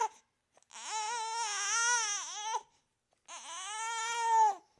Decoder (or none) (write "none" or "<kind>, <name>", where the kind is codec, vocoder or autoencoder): none